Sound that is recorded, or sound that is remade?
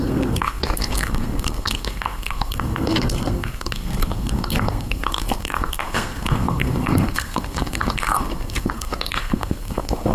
remade